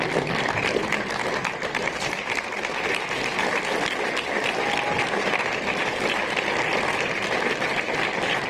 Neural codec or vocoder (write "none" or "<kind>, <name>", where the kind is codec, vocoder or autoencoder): none